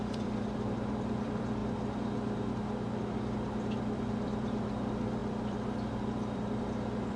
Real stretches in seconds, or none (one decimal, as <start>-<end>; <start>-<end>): 1.6-3.5